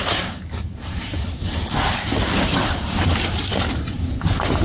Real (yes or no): no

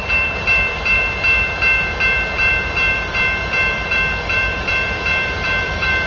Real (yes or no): no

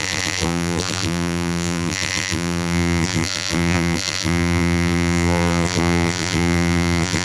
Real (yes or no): no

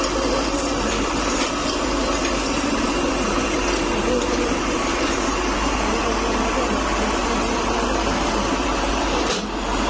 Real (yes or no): no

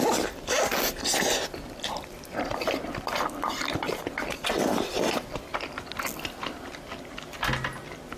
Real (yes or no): yes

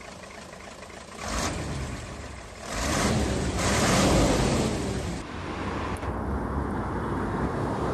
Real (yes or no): no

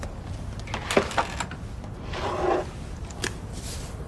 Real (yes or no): yes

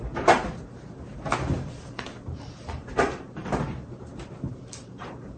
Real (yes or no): no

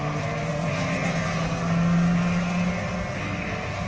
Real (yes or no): yes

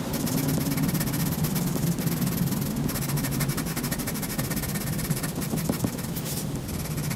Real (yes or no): no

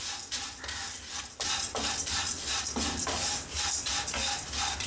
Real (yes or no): yes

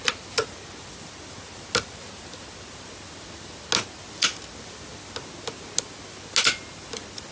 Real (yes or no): yes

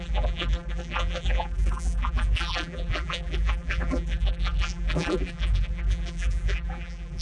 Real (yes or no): no